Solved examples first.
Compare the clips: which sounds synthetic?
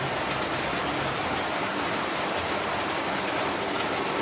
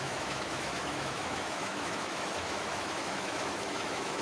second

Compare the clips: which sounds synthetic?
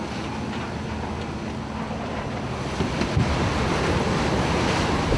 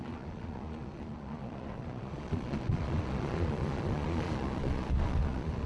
second